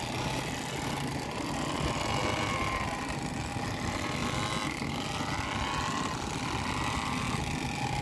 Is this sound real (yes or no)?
yes